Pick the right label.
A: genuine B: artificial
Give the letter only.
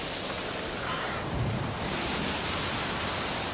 A